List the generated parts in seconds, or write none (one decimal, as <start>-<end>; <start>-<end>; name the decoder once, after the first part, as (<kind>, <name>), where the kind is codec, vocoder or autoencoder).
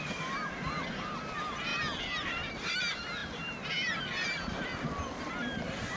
none